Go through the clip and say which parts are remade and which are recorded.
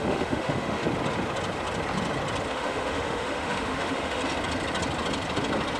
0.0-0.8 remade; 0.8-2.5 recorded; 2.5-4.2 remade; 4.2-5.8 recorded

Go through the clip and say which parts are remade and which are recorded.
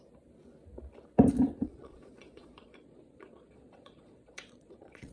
0.0-1.6 recorded; 1.6-5.1 remade